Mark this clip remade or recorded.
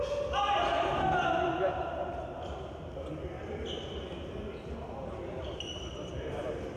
recorded